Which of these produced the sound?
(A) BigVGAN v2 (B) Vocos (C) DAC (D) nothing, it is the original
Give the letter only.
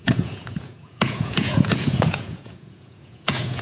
B